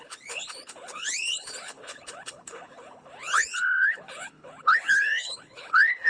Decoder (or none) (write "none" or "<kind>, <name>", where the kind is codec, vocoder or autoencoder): codec, HILCodec